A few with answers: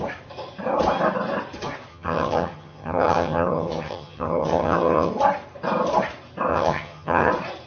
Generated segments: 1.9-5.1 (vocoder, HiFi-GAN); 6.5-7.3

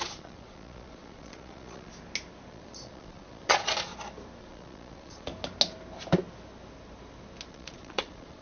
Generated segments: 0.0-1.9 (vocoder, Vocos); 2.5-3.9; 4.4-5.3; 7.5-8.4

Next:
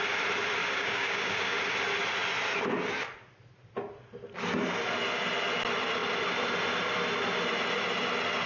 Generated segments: 0.6-1.6 (codec, DAC)

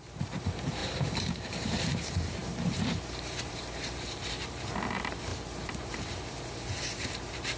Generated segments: 0.0-7.6 (vocoder, BigVGAN v2)

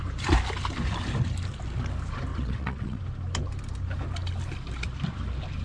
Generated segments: 2.3-3.0 (vocoder, WaveNeXt)